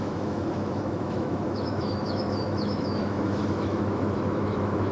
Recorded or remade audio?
remade